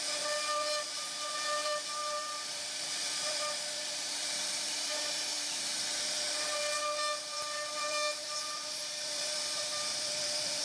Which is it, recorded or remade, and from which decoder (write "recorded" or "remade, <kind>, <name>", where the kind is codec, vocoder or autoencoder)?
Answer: remade, vocoder, BigVGAN v2